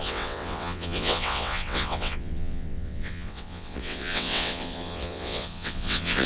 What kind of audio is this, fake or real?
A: fake